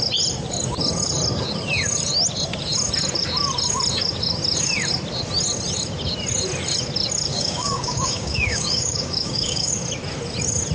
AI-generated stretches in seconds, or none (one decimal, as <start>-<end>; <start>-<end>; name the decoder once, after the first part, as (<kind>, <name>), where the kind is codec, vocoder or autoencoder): 7.3-9.7 (codec, DAC)